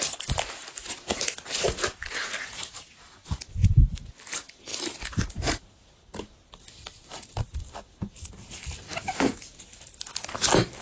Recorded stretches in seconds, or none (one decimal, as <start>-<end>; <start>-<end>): 0.0-10.8